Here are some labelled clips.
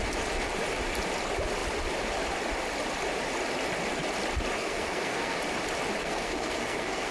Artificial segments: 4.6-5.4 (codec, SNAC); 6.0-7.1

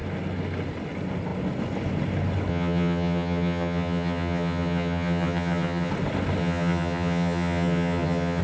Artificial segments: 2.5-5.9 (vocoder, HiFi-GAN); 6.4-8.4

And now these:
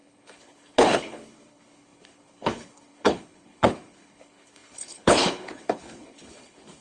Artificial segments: 0.0-6.8 (codec, HILCodec)